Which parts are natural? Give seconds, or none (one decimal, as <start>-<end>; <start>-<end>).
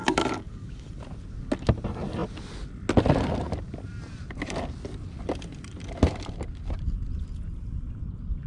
0.9-8.5